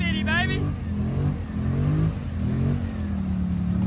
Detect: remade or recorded recorded